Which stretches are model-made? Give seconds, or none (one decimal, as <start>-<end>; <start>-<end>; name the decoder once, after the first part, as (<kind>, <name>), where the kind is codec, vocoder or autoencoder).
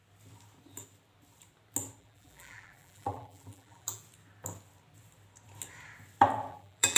2.0-4.0 (vocoder, BigVGAN v2); 6.5-7.0